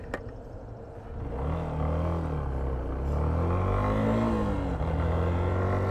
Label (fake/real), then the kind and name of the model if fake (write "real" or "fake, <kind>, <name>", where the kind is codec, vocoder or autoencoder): real